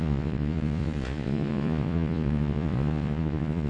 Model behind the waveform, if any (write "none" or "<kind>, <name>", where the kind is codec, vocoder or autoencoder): vocoder, Vocos